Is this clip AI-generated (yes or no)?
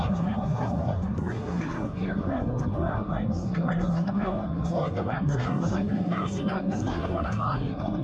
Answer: yes